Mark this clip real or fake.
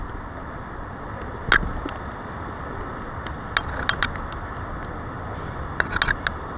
real